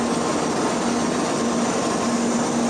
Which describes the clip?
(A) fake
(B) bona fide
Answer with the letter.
B